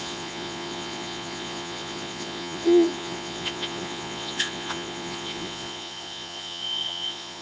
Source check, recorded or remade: remade